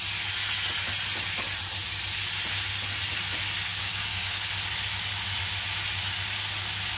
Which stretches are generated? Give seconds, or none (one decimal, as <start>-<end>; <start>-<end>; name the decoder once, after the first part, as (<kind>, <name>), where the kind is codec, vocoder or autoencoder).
3.7-4.5 (codec, DAC)